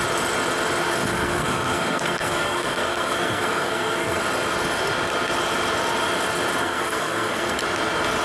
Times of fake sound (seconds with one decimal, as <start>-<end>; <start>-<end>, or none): 1.1-4.2; 6.6-7.6